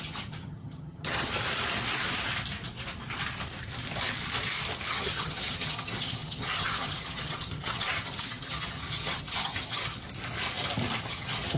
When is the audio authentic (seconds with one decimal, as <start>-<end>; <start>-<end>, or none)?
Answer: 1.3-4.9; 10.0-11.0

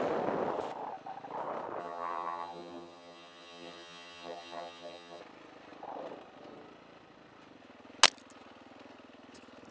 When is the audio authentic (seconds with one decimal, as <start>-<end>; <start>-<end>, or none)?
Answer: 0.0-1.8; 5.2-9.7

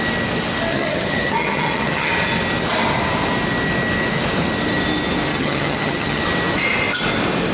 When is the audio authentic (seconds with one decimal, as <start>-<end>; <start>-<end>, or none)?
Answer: 0.0-0.7; 2.1-5.3; 6.2-7.5

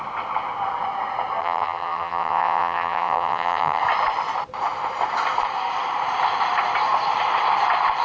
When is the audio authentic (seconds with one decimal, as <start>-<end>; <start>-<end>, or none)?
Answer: 0.0-1.4; 3.8-8.0

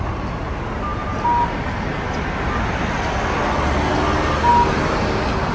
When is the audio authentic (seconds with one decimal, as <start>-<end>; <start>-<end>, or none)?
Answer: 0.0-5.5